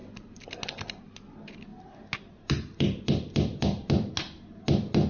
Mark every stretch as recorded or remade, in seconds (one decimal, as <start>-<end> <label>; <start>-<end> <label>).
0.0-5.1 recorded